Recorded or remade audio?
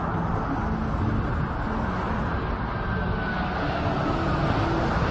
recorded